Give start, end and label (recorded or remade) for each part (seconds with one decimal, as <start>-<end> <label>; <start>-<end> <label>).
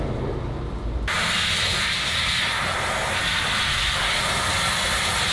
0.0-5.3 recorded